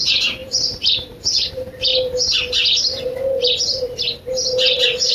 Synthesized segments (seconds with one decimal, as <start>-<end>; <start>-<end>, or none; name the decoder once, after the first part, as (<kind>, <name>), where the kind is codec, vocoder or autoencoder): 0.0-1.9 (vocoder, BigVGAN v2)